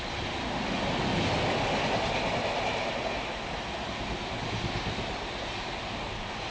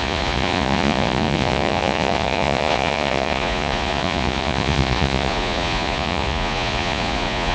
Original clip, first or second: first